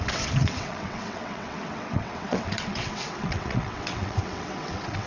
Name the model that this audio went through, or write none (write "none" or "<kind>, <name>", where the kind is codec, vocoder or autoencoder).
vocoder, WaveNeXt